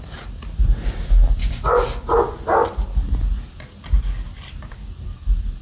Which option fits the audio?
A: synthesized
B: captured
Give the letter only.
B